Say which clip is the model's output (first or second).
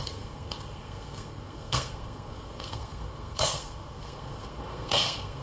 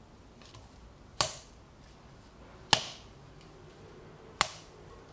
first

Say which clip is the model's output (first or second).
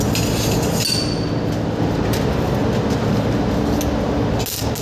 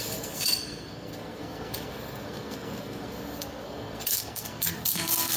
second